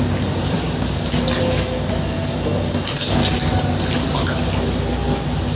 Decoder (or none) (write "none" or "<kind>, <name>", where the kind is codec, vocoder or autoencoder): vocoder, BigVGAN v2